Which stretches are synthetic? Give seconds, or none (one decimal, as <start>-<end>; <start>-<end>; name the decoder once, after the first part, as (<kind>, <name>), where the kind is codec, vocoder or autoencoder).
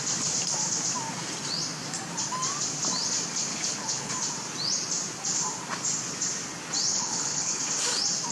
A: 3.5-4.1 (codec, HILCodec); 6.9-7.6